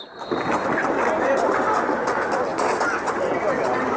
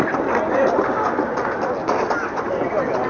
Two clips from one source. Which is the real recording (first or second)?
first